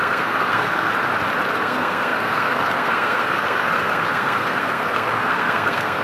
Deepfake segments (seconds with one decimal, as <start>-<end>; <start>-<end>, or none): 0.0-0.9; 1.5-6.0